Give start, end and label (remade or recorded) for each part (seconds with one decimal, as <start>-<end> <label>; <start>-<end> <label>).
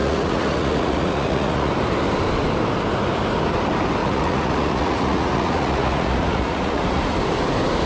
0.0-1.7 remade; 1.7-4.0 recorded; 4.0-7.0 remade; 7.0-7.9 recorded